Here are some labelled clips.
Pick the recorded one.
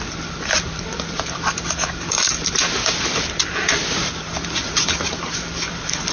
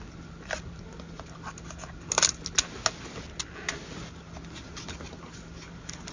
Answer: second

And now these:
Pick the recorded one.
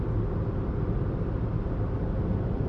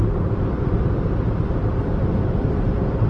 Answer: first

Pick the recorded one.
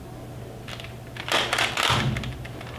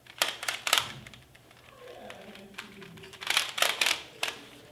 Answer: first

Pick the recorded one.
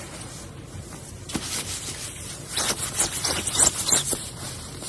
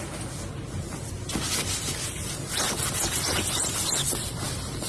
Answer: second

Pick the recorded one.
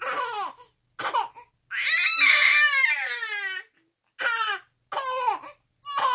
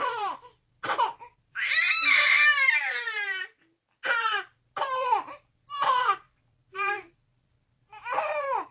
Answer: first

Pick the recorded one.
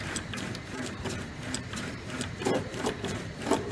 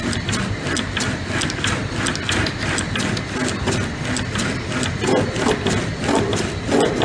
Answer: second